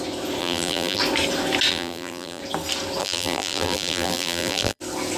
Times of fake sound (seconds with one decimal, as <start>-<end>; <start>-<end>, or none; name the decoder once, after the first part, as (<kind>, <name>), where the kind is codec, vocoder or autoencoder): 0.4-1.0 (vocoder, BigVGAN v2); 1.7-2.4; 3.0-4.8